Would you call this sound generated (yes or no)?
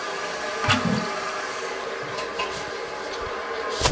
no